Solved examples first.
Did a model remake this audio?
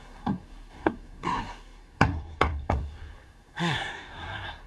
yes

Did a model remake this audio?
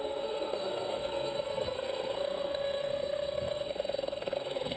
yes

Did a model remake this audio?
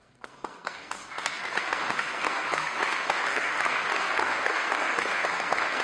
yes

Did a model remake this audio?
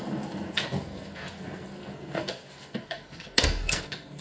yes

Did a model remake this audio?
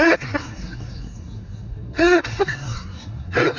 yes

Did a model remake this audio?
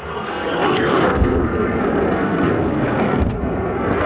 yes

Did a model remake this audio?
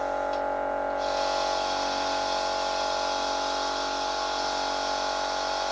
no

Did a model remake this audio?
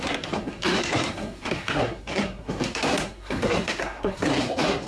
yes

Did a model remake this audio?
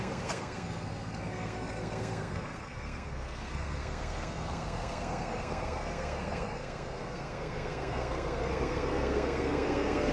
yes